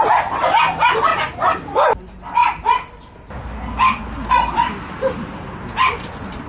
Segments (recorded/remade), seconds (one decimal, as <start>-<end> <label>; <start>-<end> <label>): 0.0-6.5 recorded